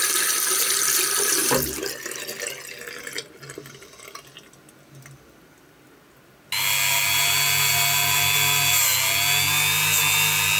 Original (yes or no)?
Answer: yes